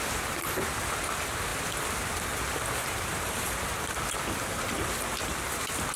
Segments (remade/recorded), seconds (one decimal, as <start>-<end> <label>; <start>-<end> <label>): 0.0-1.5 recorded; 1.5-5.0 remade; 5.0-6.0 recorded